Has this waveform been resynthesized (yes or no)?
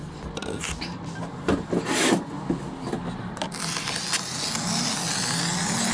no